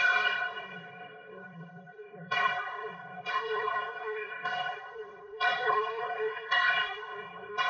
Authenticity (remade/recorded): remade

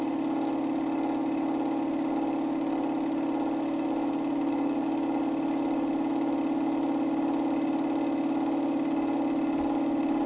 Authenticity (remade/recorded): recorded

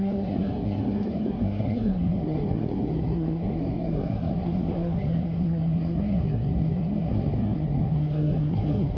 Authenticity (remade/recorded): remade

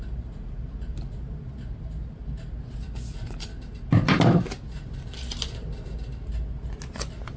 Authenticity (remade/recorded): recorded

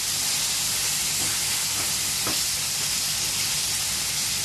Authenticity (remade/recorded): recorded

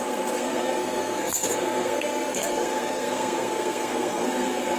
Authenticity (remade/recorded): remade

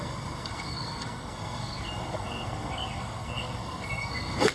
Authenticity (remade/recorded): remade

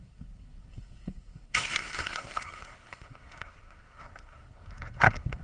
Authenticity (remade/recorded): remade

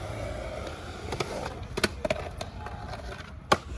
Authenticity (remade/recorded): recorded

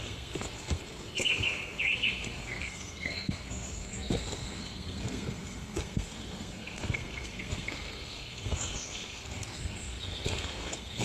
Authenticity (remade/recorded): remade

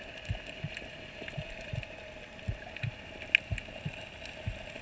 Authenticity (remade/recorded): recorded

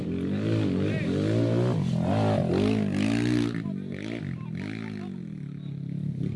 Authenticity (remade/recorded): recorded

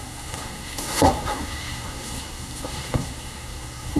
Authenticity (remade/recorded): remade